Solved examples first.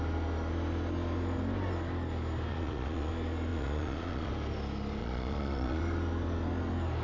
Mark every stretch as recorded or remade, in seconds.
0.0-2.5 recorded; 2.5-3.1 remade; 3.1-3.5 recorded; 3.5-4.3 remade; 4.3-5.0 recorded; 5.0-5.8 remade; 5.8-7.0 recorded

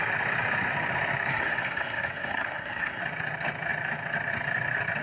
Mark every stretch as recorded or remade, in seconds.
0.0-1.3 recorded; 1.3-3.0 remade; 3.0-5.0 recorded

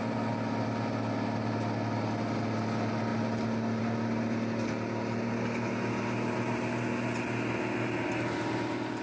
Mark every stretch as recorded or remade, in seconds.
0.0-9.0 recorded

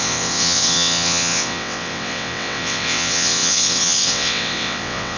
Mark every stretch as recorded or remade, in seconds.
0.0-5.2 remade

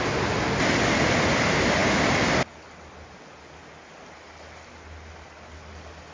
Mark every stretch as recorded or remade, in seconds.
0.0-6.1 recorded

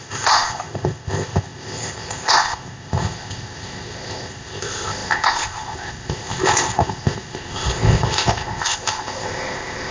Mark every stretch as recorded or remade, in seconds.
0.0-9.9 remade

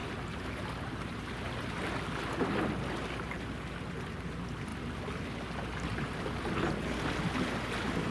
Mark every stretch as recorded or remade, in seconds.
0.0-1.3 remade; 1.3-8.1 recorded

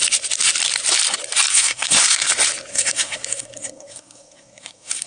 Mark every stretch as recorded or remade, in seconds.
0.0-1.5 recorded; 1.5-2.3 remade; 2.3-2.7 recorded; 2.7-5.1 remade